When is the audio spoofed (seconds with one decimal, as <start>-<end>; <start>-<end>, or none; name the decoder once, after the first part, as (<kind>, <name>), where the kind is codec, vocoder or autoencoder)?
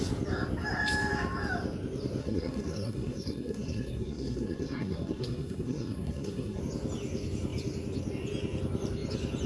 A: 2.2-6.6 (codec, SNAC)